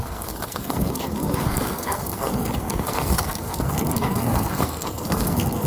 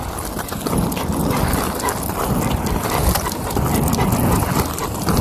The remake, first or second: first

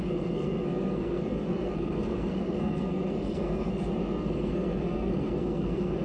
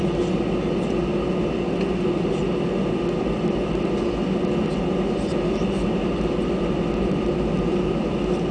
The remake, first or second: first